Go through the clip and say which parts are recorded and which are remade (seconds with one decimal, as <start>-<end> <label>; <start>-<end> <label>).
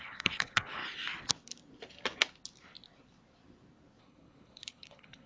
0.0-0.8 remade; 0.8-4.0 recorded; 4.0-5.3 remade